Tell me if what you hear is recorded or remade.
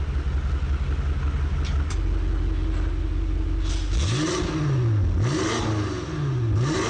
recorded